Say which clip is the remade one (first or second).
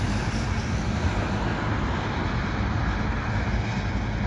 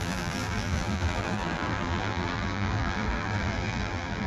second